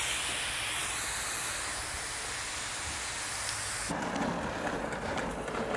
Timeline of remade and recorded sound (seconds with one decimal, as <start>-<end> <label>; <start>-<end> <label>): 0.0-5.8 recorded